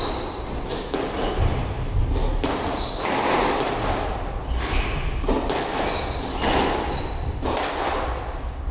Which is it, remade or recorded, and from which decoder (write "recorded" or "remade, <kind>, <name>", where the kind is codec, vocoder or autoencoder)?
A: recorded